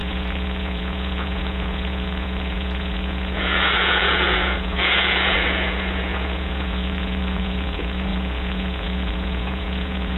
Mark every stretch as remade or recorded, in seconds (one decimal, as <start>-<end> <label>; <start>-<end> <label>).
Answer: 0.0-10.2 remade